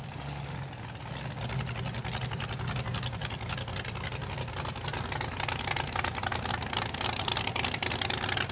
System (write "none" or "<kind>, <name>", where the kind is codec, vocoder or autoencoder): none